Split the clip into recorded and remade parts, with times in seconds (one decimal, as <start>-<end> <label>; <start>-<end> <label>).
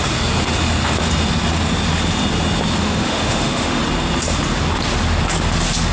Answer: 0.0-2.8 recorded; 2.8-3.8 remade; 3.8-5.9 recorded